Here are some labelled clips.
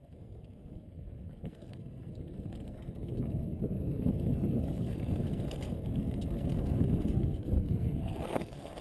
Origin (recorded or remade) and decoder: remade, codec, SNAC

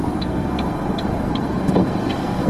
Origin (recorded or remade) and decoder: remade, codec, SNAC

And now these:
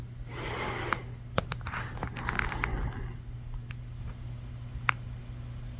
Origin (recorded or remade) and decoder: recorded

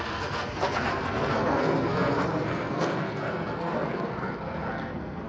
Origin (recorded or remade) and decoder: remade, codec, SNAC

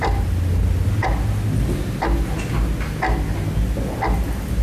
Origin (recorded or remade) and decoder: recorded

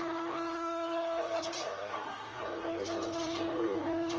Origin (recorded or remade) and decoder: remade, codec, SNAC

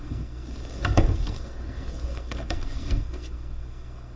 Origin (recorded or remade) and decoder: remade, codec, SNAC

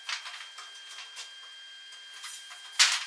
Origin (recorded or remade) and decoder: recorded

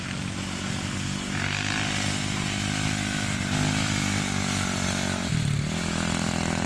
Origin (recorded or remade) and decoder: recorded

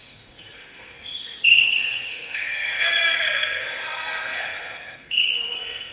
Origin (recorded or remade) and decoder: remade, codec, SNAC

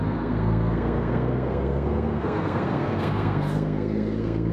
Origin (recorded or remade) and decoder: remade, codec, SNAC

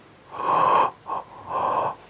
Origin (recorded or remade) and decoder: recorded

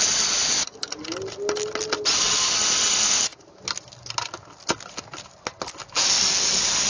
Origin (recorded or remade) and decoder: recorded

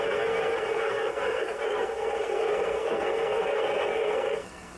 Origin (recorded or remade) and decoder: remade, codec, SNAC